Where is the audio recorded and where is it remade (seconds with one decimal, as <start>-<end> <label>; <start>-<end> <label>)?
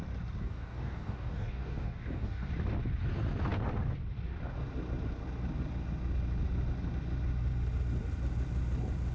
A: 0.0-0.4 recorded; 0.4-2.5 remade; 2.5-9.1 recorded